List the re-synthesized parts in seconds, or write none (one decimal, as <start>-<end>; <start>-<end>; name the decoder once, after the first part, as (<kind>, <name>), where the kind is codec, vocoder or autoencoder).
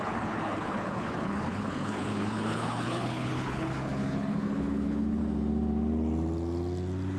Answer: 0.0-5.2 (codec, HILCodec)